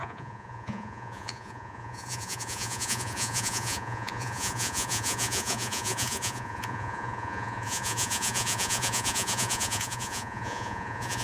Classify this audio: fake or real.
fake